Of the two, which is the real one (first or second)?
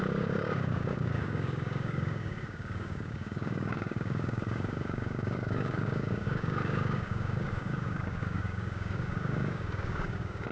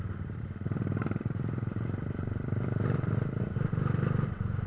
second